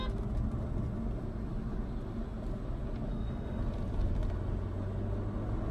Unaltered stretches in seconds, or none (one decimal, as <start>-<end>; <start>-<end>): 0.0-3.1; 3.6-5.7